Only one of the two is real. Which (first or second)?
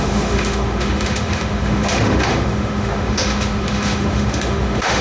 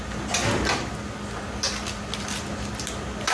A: second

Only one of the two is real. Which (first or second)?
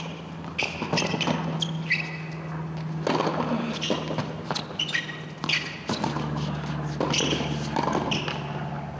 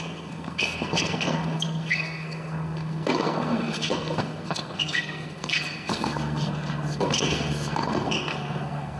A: first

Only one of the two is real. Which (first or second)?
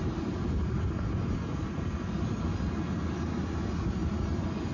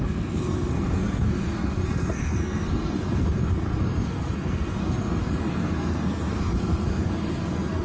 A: first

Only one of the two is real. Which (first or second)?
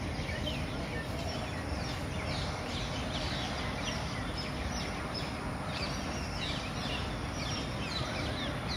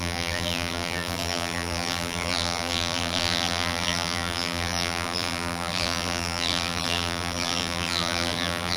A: first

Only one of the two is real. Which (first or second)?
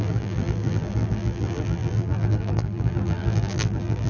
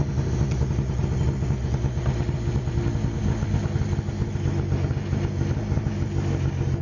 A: second